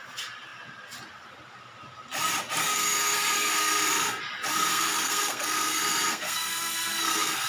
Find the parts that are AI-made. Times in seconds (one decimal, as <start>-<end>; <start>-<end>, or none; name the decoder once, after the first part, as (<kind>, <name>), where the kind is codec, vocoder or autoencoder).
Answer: 2.6-4.2 (codec, SNAC); 4.7-7.5